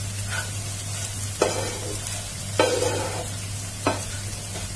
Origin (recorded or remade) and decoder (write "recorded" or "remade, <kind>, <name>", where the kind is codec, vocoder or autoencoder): recorded